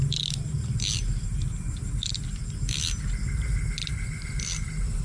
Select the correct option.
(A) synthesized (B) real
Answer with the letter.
B